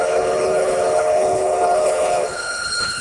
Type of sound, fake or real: fake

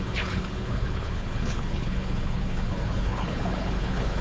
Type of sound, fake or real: fake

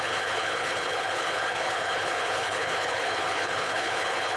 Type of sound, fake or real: fake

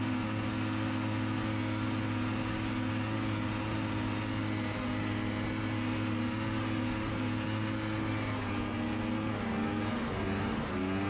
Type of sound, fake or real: real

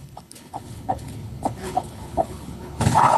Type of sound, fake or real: fake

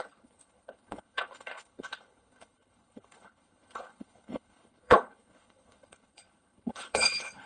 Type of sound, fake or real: fake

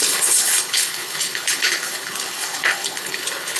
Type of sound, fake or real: fake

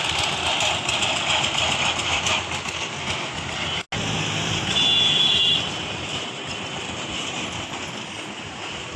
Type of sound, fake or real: real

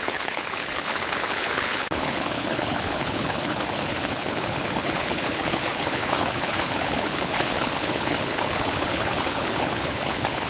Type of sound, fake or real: fake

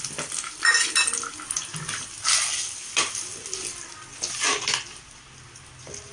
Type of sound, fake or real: real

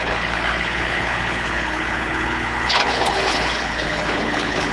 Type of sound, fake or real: fake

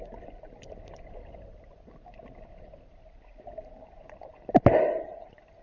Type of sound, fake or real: real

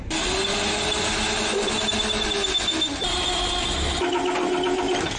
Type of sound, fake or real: real